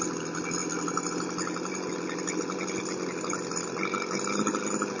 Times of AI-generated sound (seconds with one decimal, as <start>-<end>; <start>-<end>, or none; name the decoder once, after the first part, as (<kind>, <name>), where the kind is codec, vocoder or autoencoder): none